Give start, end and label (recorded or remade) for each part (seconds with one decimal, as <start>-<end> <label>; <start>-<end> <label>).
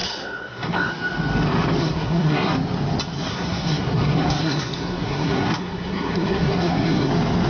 0.0-0.9 remade; 0.9-1.8 recorded; 1.8-2.5 remade; 2.5-3.3 recorded; 3.3-7.1 remade; 7.1-7.5 recorded